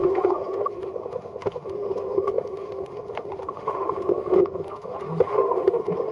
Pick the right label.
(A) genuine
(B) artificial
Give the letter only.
B